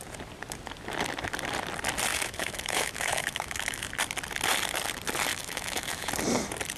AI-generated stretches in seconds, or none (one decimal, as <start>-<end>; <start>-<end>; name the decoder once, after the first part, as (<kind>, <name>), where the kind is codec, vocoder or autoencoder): 2.1-3.9 (autoencoder, DAC-VAE); 5.3-6.1